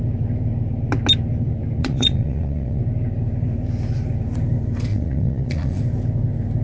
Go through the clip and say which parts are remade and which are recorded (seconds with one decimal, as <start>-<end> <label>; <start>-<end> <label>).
0.0-1.8 recorded; 1.8-2.8 remade; 2.8-4.9 recorded; 4.9-5.8 remade; 5.8-6.6 recorded